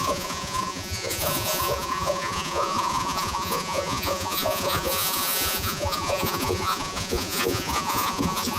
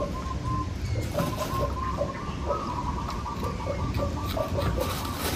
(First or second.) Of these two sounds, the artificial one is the first